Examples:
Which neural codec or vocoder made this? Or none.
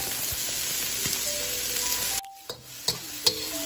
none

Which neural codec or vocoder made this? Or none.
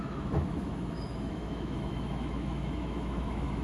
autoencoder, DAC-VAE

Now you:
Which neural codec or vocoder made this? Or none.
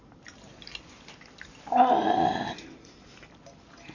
none